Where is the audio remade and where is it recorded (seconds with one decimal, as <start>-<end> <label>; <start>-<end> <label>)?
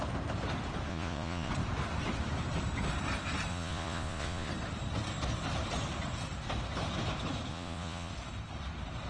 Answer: 0.0-0.9 recorded; 0.9-1.5 remade; 1.5-3.5 recorded; 3.5-4.5 remade; 4.5-7.5 recorded; 7.5-8.1 remade; 8.1-9.1 recorded